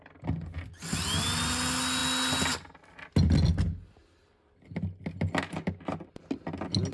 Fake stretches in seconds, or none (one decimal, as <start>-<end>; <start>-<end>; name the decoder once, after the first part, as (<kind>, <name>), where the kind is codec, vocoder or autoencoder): none